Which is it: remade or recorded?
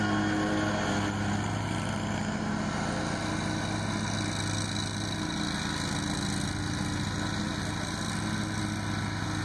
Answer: recorded